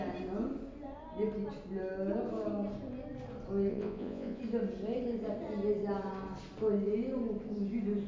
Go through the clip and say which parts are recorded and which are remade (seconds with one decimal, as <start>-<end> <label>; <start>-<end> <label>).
0.0-3.7 recorded; 3.7-4.4 remade; 4.4-8.1 recorded